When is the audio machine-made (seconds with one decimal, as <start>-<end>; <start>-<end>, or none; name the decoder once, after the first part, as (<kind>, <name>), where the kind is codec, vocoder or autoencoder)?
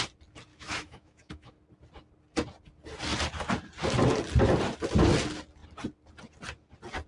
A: 0.5-1.5 (autoencoder, DAC-VAE)